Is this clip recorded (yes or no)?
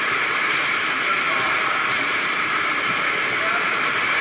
no